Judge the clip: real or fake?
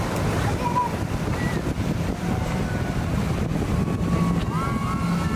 real